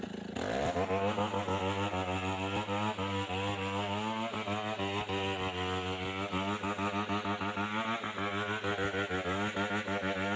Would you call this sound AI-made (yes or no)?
no